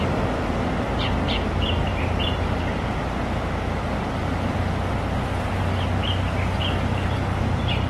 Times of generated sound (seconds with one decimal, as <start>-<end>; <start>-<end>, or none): none